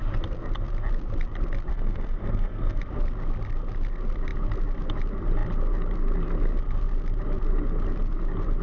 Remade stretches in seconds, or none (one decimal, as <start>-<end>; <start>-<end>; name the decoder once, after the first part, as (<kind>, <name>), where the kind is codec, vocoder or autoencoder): 1.7-2.8 (codec, SNAC)